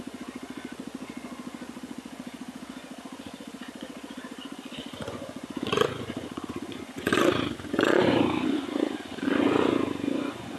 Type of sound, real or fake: fake